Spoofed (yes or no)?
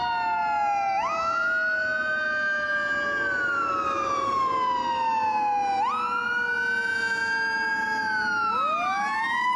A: no